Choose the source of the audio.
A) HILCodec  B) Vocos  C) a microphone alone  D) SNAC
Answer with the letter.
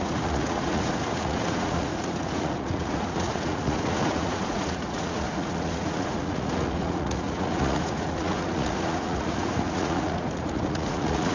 B